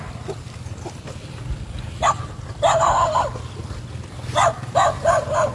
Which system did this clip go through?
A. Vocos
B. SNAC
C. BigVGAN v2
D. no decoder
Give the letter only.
D